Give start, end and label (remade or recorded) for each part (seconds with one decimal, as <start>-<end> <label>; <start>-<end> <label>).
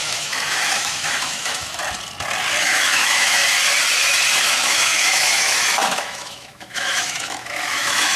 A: 0.0-1.8 remade; 1.8-2.6 recorded; 2.6-3.4 remade; 3.4-4.4 recorded; 4.4-8.2 remade